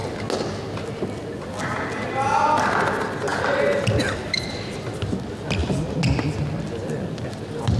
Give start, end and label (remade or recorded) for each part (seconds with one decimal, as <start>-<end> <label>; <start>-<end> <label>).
0.0-7.8 recorded